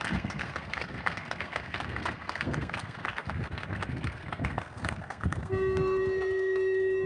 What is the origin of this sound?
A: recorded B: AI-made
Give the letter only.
B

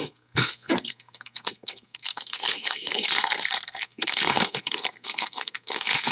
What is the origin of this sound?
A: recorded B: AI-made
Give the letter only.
B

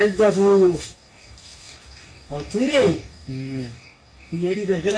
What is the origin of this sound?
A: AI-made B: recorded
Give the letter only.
A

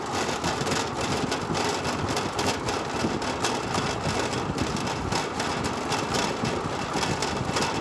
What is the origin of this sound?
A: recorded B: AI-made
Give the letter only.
A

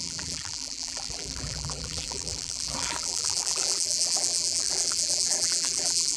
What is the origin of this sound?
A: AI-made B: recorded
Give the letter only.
A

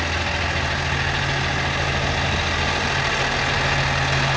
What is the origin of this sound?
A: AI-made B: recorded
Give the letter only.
B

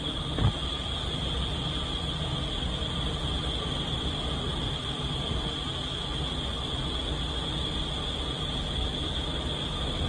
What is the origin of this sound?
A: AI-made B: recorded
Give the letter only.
B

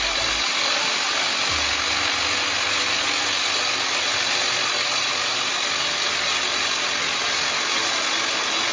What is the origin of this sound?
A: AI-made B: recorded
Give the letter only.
B